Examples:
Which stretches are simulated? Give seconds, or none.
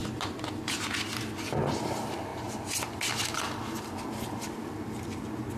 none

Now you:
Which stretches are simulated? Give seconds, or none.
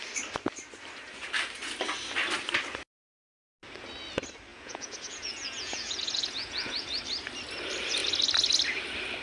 4.5-7.0 (vocoder, Vocos)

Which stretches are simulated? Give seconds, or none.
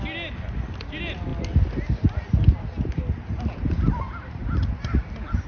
none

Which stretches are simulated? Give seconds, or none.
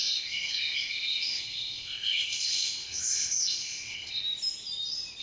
0.0-4.2 (codec, ZipCodec)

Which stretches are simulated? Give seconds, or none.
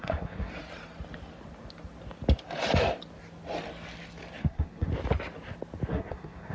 0.0-0.5 (codec, SNAC); 4.4-4.9; 5.9-6.5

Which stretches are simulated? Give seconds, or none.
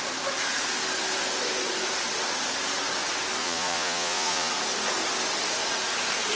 3.4-4.5 (vocoder, Vocos)